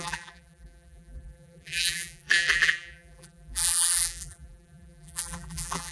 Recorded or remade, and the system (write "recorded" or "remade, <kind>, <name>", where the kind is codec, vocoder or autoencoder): remade, vocoder, BigVGAN v2